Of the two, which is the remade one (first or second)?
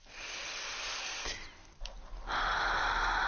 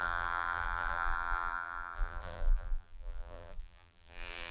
second